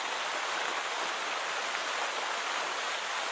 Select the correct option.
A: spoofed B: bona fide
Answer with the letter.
B